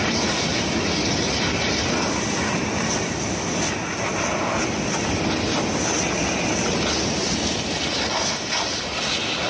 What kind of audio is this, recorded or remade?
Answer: recorded